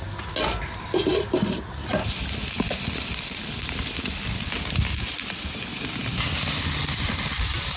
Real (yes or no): yes